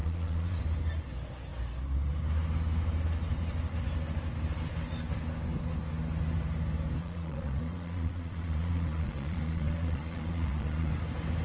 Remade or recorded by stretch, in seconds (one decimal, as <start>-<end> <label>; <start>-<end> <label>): 0.0-0.6 remade; 0.6-7.0 recorded; 7.0-10.9 remade; 10.9-11.4 recorded